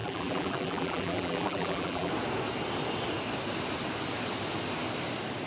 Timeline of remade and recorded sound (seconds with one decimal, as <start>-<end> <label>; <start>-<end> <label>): 0.0-2.1 remade; 2.1-5.5 recorded